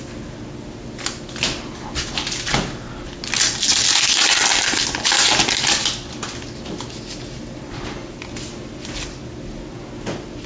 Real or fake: real